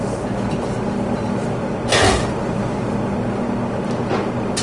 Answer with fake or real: real